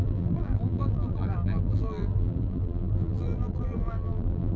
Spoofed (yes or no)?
yes